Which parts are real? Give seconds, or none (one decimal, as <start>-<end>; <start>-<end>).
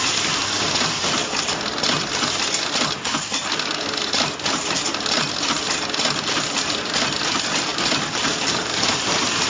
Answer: 1.2-6.2